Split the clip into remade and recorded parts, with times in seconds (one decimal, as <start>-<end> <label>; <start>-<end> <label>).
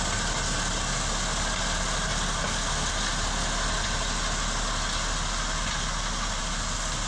0.0-7.1 recorded